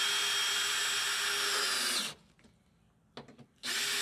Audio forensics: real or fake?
real